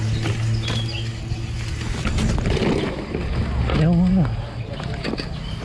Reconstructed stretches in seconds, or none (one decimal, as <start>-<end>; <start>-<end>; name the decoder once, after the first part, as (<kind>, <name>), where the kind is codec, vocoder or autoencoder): none